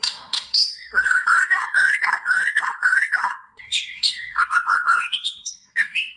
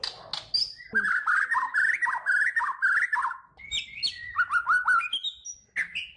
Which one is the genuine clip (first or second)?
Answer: second